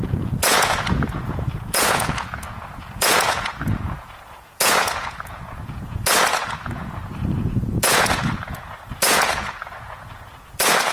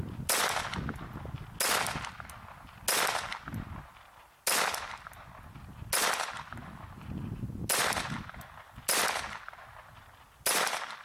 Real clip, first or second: second